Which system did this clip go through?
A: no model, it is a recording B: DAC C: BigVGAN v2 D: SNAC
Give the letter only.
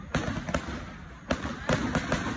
A